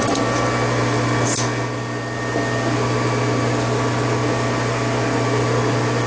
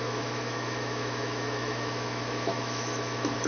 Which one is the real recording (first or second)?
first